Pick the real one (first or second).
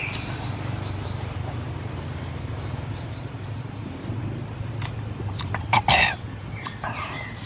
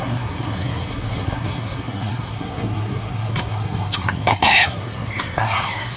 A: first